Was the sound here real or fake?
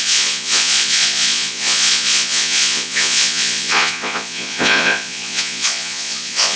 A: fake